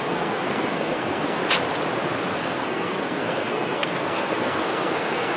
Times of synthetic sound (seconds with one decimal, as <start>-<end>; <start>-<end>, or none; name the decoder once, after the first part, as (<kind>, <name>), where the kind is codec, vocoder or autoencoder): 0.0-1.4 (codec, SNAC); 2.4-5.4